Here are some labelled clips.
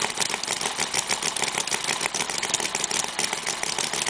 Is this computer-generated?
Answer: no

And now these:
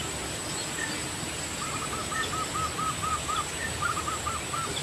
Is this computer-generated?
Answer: no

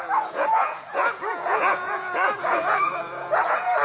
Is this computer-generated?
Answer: yes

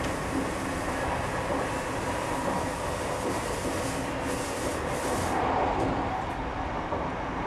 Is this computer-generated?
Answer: no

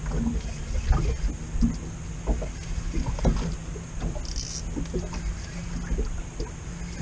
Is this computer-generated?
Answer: no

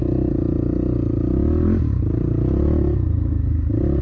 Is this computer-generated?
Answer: no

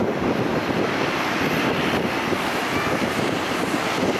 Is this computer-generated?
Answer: no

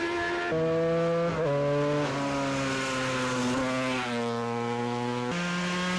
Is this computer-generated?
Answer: no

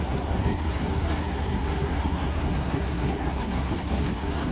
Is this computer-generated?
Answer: yes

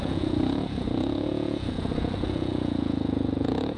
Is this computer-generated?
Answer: yes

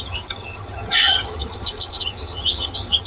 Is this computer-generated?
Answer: yes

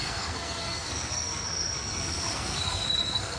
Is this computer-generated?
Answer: yes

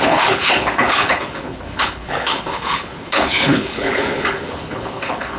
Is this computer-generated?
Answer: yes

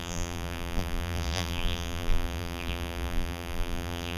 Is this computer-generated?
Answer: yes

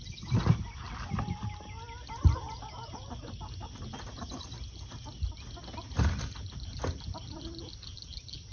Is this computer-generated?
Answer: no